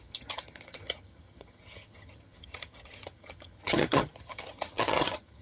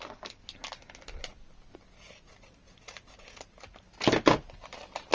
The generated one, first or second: first